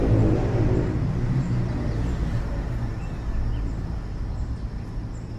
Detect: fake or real fake